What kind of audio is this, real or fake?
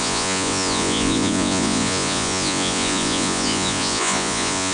fake